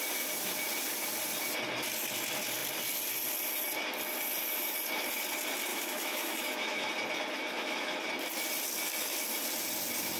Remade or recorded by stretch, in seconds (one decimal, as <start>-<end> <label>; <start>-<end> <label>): 0.0-5.7 recorded; 5.7-6.9 remade; 6.9-7.4 recorded; 7.4-8.0 remade; 8.0-10.2 recorded